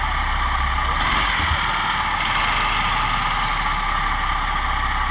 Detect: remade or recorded recorded